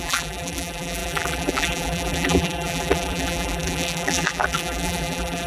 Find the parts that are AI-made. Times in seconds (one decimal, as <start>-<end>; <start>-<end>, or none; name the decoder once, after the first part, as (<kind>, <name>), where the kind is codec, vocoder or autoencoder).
0.0-5.5 (vocoder, BigVGAN v2)